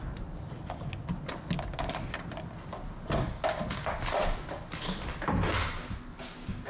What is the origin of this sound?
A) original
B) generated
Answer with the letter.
A